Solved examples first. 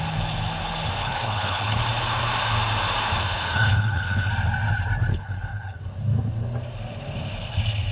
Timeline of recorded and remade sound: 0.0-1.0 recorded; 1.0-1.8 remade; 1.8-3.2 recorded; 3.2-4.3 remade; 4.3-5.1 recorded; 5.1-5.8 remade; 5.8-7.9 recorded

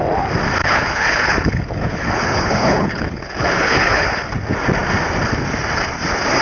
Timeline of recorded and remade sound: 0.0-0.6 recorded; 0.6-4.3 remade; 4.3-6.4 recorded

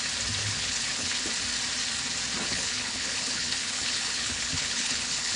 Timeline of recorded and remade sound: 0.0-0.4 recorded; 0.4-1.3 remade; 1.3-2.4 recorded; 2.4-5.4 remade

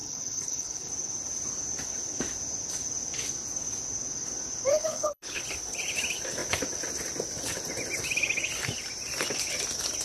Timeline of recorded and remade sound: 0.0-0.9 remade; 0.9-4.7 recorded; 4.7-5.4 remade; 5.4-10.0 recorded

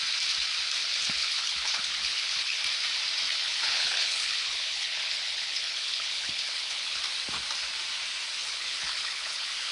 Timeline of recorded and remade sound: 0.0-0.8 recorded; 0.8-2.6 remade; 2.6-3.4 recorded; 3.4-7.0 remade; 7.0-8.4 recorded; 8.4-9.7 remade